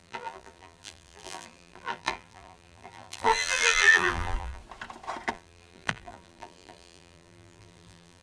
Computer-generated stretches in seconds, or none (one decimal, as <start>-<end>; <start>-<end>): 0.0-4.6; 5.3-8.2